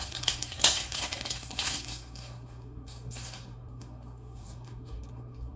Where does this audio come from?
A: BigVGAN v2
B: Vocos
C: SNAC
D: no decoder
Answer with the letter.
C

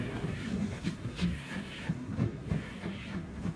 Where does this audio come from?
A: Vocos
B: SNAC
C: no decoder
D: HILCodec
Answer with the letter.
B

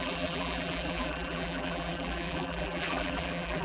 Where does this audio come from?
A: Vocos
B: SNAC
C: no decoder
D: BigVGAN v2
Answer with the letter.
D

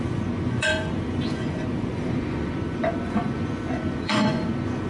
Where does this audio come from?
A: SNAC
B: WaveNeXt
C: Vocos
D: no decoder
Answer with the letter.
C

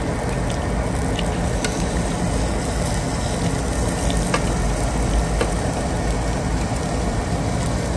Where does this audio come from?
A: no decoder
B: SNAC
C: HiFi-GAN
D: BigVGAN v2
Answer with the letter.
A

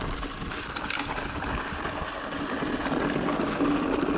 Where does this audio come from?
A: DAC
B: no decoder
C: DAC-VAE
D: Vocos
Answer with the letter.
B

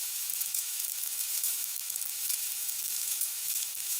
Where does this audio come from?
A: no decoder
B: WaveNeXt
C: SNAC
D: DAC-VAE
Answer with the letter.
D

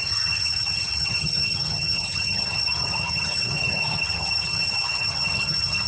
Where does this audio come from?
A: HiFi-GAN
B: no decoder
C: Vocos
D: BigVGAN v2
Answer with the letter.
A